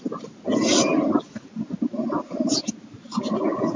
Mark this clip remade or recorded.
recorded